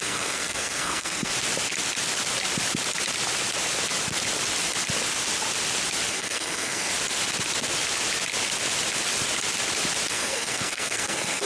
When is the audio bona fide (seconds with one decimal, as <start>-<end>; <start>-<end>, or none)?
1.3-6.1; 6.9-10.1